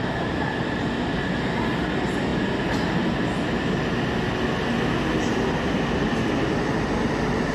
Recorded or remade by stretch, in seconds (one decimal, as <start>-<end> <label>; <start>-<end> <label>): 0.0-7.5 recorded